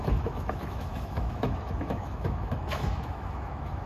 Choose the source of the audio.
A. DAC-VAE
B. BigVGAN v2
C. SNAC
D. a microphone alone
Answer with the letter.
A